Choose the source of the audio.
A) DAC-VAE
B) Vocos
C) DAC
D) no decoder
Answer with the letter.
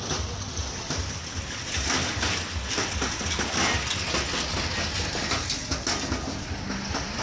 D